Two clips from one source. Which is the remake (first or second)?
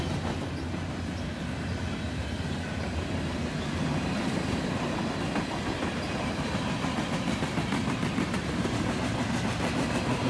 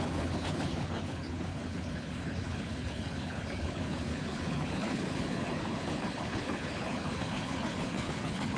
second